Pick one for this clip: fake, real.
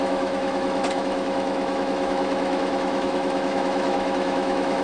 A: fake